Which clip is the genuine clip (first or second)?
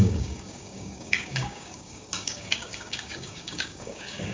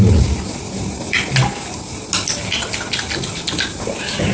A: second